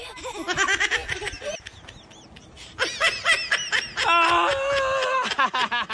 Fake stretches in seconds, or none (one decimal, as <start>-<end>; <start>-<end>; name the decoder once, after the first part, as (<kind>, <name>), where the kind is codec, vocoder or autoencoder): none